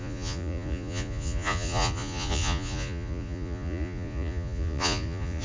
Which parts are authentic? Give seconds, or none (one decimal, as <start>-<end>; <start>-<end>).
none

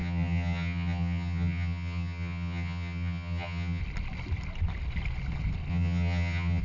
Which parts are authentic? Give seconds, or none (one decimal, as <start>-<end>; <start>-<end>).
3.8-5.7

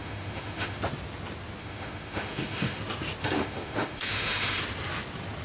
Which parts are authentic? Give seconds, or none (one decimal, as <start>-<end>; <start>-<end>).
0.8-1.6; 2.8-3.2; 4.6-5.4

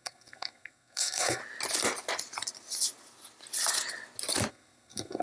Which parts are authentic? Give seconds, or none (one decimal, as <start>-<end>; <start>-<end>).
1.4-4.5

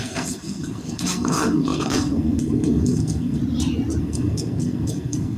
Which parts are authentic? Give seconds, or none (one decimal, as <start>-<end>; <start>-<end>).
3.4-4.0